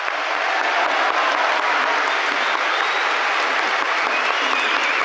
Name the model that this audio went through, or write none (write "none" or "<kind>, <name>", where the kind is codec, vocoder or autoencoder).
none